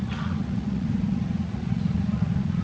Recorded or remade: remade